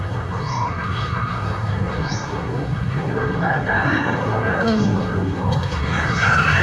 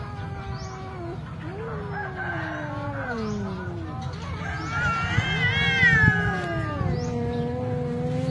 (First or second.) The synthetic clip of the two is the first